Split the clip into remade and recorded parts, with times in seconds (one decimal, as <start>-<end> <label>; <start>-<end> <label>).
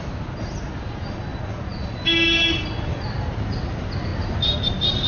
0.0-5.1 recorded